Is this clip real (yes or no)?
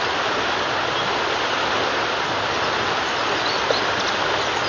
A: yes